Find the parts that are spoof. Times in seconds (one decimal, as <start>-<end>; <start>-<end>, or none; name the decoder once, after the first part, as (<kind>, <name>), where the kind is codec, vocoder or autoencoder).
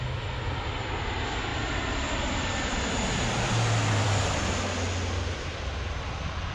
1.5-4.5 (vocoder, BigVGAN v2)